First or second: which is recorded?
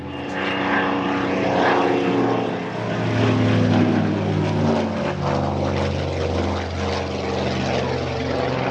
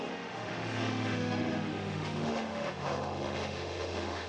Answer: first